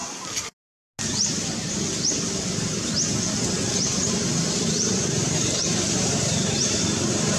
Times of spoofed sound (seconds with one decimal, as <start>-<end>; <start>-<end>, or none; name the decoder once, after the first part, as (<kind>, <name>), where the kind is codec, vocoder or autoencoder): 4.1-7.4 (vocoder, BigVGAN v2)